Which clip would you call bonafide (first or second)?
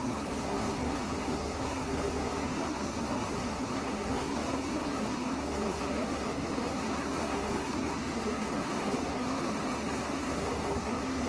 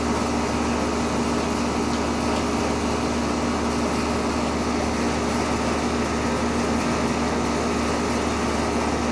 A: second